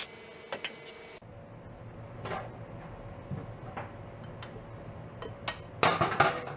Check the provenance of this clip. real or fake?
real